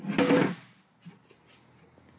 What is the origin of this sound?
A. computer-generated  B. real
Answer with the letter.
B